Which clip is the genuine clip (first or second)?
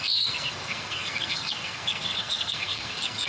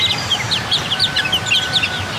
second